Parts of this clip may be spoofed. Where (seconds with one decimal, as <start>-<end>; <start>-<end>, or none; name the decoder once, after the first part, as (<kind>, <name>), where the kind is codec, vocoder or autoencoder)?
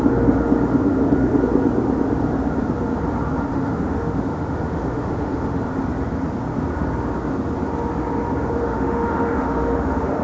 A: 0.9-1.4 (autoencoder, DAC-VAE); 3.5-5.6; 8.6-10.2